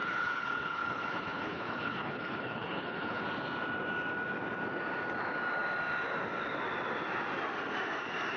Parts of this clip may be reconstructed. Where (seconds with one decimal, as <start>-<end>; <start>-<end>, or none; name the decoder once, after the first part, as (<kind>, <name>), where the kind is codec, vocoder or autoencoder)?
0.0-3.2 (codec, HILCodec)